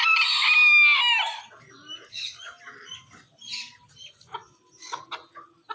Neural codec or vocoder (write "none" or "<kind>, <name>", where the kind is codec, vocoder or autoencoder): none